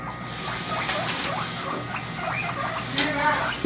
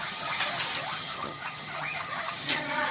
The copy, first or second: second